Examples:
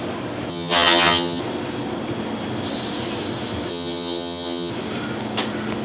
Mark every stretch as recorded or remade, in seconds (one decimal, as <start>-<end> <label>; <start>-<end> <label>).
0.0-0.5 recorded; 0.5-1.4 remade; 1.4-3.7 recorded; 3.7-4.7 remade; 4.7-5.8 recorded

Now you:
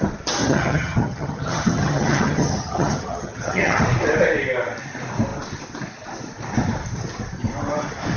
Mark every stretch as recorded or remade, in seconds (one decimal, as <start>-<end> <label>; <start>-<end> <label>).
0.0-0.4 recorded; 0.4-3.8 remade; 3.8-8.2 recorded

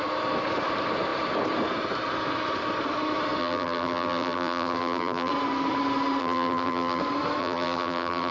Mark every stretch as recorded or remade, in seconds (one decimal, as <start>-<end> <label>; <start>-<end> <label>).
0.0-3.4 recorded; 3.4-5.3 remade; 5.3-6.2 recorded; 6.2-7.0 remade; 7.0-7.4 recorded; 7.4-8.3 remade